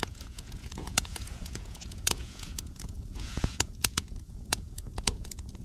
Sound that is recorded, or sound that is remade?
remade